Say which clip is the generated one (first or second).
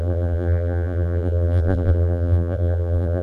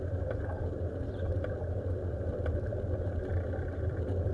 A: first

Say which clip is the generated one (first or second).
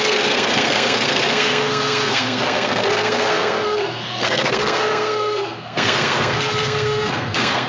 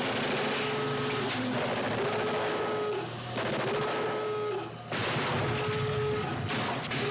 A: first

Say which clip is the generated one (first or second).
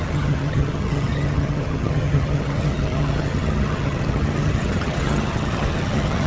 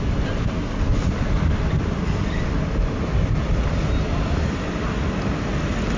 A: first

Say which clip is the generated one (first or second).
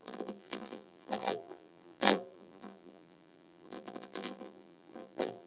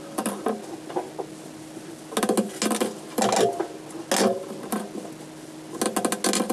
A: first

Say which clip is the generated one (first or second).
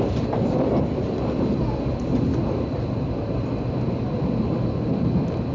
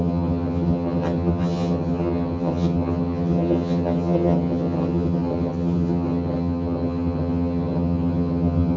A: second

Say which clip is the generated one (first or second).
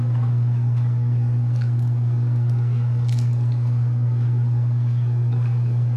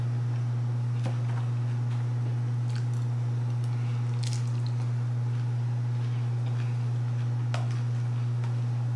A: first